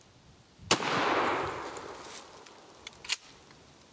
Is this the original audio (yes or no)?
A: yes